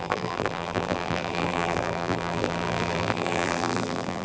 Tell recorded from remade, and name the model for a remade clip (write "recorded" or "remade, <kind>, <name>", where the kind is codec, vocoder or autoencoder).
remade, vocoder, BigVGAN v2